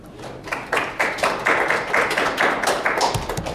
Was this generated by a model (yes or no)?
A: no